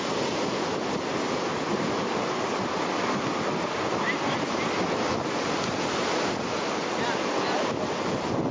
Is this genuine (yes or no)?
yes